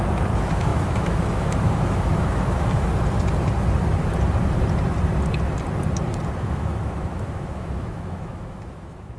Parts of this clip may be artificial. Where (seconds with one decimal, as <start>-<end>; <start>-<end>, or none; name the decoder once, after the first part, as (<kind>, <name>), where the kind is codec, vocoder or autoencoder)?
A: 0.0-2.9 (autoencoder, DAC-VAE); 6.4-9.2